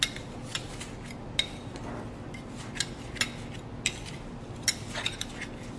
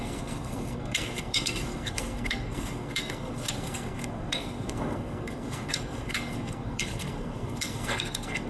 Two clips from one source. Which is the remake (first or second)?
second